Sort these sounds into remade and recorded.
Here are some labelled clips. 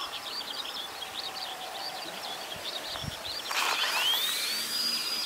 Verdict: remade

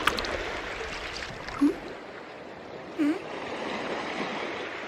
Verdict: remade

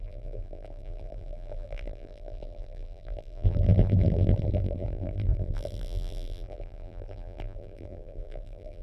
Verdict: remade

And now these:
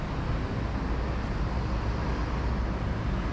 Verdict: recorded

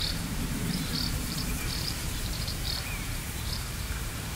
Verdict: remade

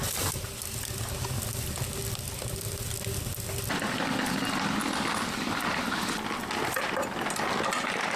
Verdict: recorded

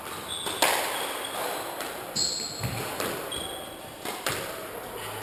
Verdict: recorded